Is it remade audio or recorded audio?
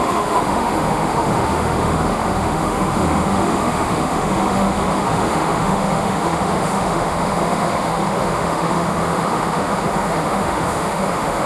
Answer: remade